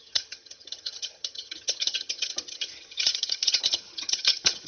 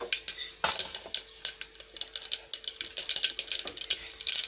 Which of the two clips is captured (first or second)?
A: second